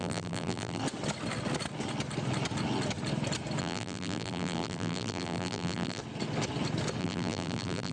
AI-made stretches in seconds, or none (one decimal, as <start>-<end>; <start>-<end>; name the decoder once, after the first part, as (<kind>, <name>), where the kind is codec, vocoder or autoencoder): 0.0-0.8 (vocoder, BigVGAN v2); 3.6-6.0; 7.0-7.9

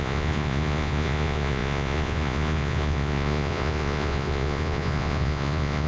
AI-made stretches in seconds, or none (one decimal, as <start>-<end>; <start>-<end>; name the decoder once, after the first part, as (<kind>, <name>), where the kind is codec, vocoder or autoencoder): 0.0-5.9 (vocoder, Vocos)